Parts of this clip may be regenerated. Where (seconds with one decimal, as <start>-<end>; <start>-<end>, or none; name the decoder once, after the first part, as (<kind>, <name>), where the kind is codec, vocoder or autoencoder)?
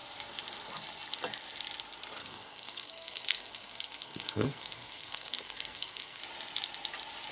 2.2-6.2 (codec, SNAC)